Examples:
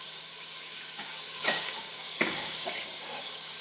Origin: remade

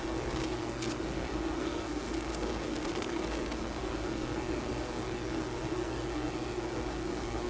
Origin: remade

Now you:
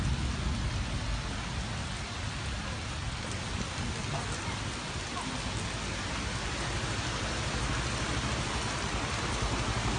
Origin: recorded